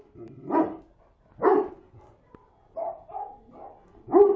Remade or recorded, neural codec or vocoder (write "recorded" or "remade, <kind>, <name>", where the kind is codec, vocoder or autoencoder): recorded